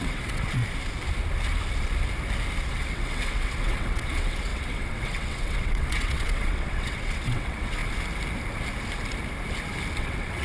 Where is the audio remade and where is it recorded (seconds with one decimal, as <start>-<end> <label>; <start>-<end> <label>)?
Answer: 0.0-0.6 remade; 0.6-2.7 recorded; 2.7-7.8 remade; 7.8-10.0 recorded; 10.0-10.4 remade